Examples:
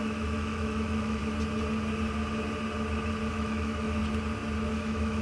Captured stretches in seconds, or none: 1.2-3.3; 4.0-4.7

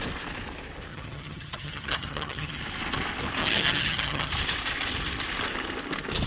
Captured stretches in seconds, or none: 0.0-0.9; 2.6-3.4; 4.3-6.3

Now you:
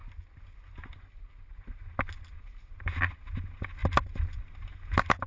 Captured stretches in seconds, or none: 0.0-5.3

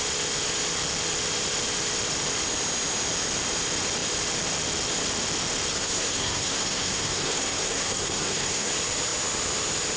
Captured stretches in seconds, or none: 0.0-5.7; 8.7-10.0